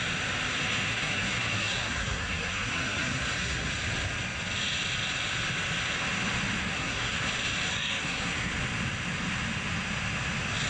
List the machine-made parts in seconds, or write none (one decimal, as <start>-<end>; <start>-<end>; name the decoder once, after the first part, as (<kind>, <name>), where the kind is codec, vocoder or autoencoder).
0.9-3.7 (codec, SNAC); 6.6-7.3; 7.7-8.5